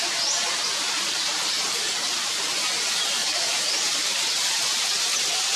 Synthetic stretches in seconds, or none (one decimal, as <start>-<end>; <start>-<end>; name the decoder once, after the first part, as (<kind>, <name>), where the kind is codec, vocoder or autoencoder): none